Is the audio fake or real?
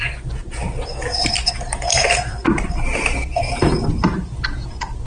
real